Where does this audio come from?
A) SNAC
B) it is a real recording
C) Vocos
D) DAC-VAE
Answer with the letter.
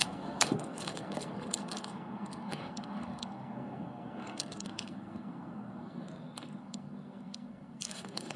A